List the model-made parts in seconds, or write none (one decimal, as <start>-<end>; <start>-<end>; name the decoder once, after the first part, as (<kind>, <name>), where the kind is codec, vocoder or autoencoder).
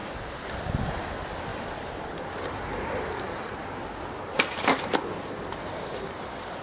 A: 0.0-0.5 (vocoder, BigVGAN v2); 1.5-4.8